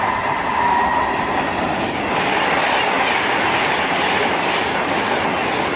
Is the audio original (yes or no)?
yes